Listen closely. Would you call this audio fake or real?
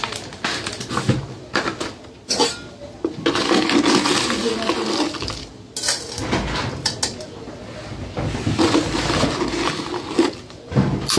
real